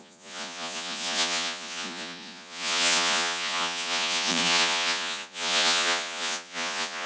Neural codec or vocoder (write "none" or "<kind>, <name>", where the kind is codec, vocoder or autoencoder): vocoder, Vocos